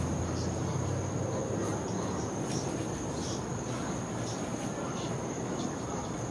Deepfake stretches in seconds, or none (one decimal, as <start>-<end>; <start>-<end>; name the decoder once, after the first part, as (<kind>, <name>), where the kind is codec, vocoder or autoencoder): none